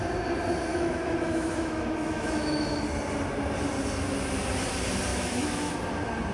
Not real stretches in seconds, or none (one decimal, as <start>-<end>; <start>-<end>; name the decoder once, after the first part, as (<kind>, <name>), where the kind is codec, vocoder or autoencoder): 0.7-2.8 (autoencoder, DAC-VAE); 5.1-5.7